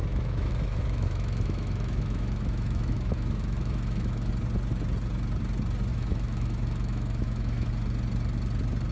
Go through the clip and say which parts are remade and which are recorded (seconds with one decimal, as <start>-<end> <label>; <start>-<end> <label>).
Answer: 0.0-4.3 remade; 4.3-5.9 recorded; 5.9-7.7 remade; 7.7-8.9 recorded

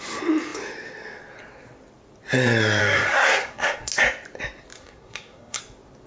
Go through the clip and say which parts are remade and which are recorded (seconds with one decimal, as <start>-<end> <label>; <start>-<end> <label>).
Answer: 0.0-2.8 recorded; 2.8-3.9 remade; 3.9-4.8 recorded; 4.8-5.6 remade; 5.6-6.1 recorded

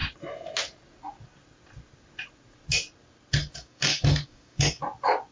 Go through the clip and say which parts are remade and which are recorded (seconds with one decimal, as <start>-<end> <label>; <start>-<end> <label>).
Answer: 0.0-3.4 recorded; 3.4-4.8 remade; 4.8-5.3 recorded